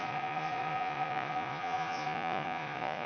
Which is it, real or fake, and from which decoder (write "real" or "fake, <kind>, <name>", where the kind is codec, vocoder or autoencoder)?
fake, vocoder, Vocos